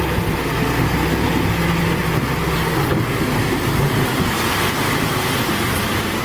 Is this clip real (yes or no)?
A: yes